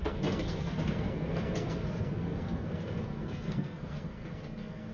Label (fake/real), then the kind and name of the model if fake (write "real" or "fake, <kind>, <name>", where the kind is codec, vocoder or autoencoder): fake, codec, SNAC